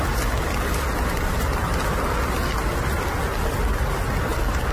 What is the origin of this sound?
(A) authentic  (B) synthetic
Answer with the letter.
A